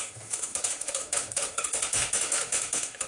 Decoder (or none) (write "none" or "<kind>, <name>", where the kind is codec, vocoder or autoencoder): autoencoder, DAC-VAE